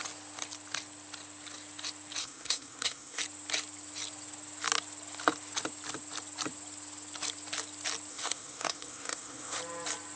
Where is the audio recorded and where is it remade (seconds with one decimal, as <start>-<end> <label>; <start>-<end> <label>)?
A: 0.0-2.2 recorded; 2.2-3.2 remade; 3.2-8.1 recorded; 8.1-9.6 remade; 9.6-10.2 recorded

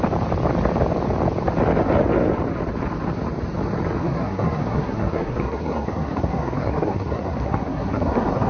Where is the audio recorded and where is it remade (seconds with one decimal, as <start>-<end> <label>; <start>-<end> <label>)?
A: 0.0-4.0 recorded; 4.0-8.5 remade

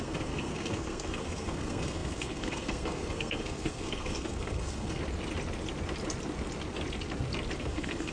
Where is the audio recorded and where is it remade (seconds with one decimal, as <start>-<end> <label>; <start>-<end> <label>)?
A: 0.0-5.0 remade; 5.0-7.6 recorded; 7.6-8.1 remade

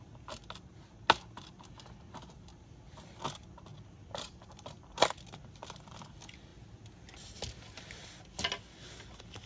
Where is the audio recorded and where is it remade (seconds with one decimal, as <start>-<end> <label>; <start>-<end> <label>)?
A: 0.0-9.5 recorded

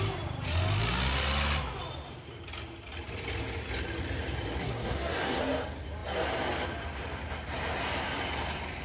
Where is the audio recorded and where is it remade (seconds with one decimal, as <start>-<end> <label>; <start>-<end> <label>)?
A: 0.0-4.6 recorded; 4.6-5.4 remade; 5.4-8.8 recorded

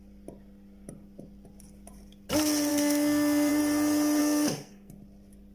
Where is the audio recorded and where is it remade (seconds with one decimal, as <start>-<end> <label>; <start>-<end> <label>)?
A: 0.0-2.7 recorded; 2.7-3.5 remade; 3.5-4.2 recorded; 4.2-4.9 remade; 4.9-5.5 recorded

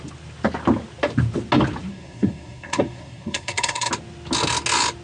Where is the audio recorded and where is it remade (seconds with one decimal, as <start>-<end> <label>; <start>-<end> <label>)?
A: 0.0-1.9 recorded; 1.9-3.9 remade; 3.9-5.0 recorded

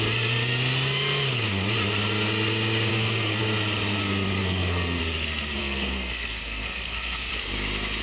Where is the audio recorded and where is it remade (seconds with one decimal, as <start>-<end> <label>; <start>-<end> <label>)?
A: 0.0-2.9 recorded; 2.9-3.4 remade; 3.4-4.4 recorded; 4.4-5.0 remade; 5.0-5.6 recorded; 5.6-7.3 remade; 7.3-8.0 recorded